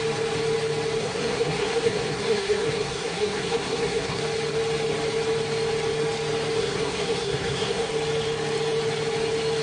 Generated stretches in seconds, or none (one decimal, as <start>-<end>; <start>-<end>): 1.0-4.2; 6.6-7.9